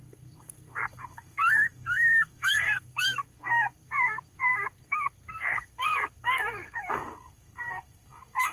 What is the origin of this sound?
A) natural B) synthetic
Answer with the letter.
B